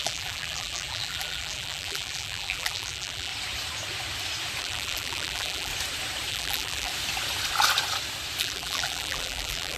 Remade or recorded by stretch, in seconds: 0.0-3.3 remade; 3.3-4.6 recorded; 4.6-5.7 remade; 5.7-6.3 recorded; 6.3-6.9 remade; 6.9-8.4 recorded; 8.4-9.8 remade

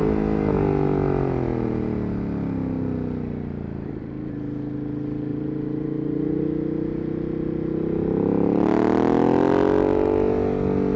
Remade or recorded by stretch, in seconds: 0.0-5.3 recorded; 5.3-6.4 remade; 6.4-11.0 recorded

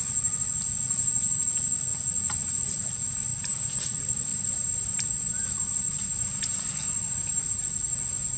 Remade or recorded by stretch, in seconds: 0.0-3.3 recorded; 3.3-3.8 remade; 3.8-4.3 recorded; 4.3-7.5 remade; 7.5-8.4 recorded